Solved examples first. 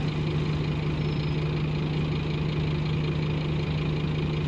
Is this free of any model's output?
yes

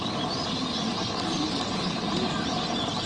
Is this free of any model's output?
yes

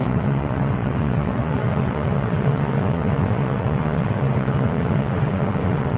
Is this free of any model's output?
no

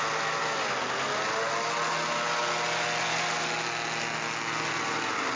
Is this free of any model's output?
yes